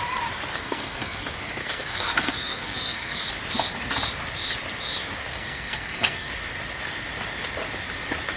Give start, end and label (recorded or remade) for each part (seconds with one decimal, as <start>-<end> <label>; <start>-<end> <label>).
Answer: 0.0-0.5 recorded; 0.5-1.2 remade; 1.2-1.6 recorded; 1.6-3.3 remade; 3.3-5.3 recorded; 5.3-6.3 remade; 6.3-8.4 recorded